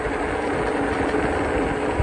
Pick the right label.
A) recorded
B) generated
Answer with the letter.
A